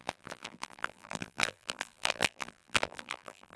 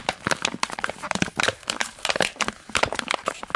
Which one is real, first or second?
second